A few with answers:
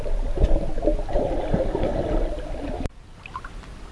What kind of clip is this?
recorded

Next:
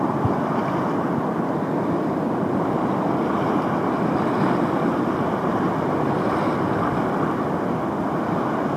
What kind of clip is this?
recorded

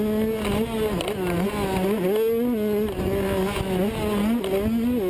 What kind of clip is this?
recorded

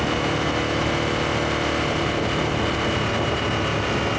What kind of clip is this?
recorded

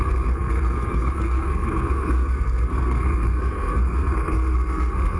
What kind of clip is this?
remade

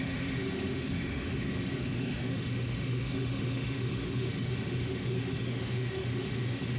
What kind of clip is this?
remade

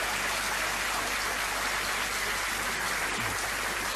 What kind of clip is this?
recorded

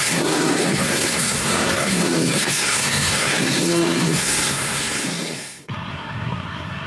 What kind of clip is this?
remade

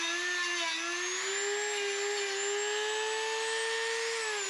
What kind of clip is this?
recorded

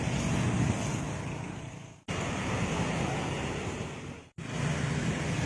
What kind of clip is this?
recorded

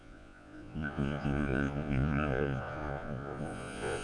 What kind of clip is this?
remade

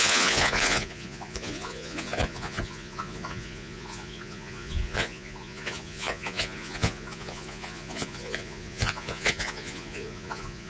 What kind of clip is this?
remade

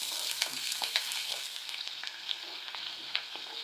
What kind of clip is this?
remade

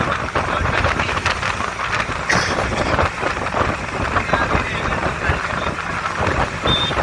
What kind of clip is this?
recorded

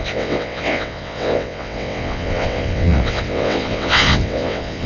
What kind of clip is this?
remade